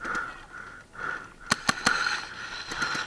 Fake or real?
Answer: real